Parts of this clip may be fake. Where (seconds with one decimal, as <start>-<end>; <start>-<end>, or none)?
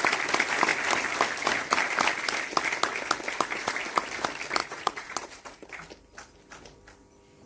4.6-5.7